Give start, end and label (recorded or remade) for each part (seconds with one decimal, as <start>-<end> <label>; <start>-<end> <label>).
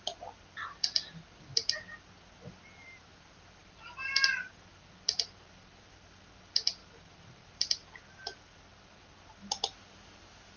0.0-10.6 recorded